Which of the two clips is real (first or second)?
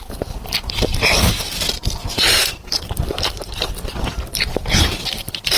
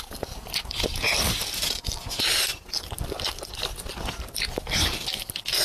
second